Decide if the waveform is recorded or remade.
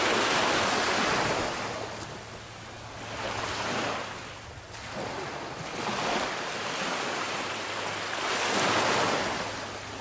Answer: recorded